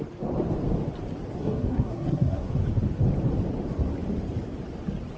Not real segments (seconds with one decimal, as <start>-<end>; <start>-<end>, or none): 1.4-2.5